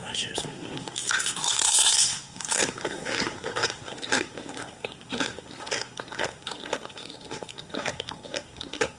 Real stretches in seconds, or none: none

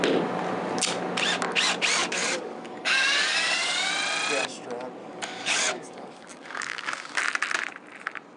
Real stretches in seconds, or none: 0.0-2.0; 3.9-5.0; 7.2-8.4

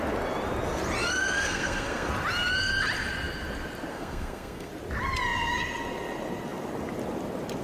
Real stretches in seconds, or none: 0.0-1.0; 2.1-3.9; 4.7-7.6

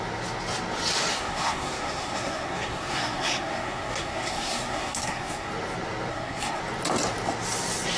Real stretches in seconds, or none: 0.0-1.1; 5.5-6.1; 6.6-8.0

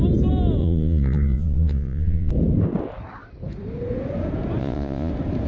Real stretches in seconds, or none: 0.0-0.6; 2.3-4.6; 5.1-5.5

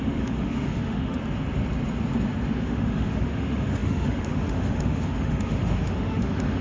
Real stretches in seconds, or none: 1.2-2.5

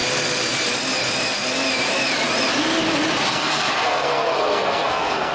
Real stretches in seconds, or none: 0.0-3.3

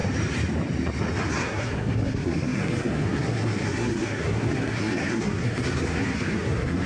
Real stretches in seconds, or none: 0.0-1.3